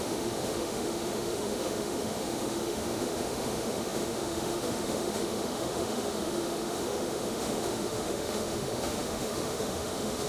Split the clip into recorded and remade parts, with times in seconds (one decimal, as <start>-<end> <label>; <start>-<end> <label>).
0.0-10.3 remade